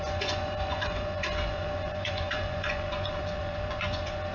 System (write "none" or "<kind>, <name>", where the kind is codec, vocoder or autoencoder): vocoder, Vocos